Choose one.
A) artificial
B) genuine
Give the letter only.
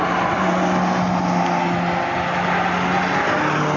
B